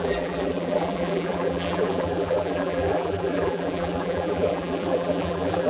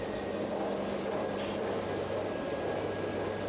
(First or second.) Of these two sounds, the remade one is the first